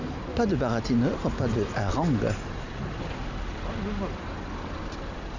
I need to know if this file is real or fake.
real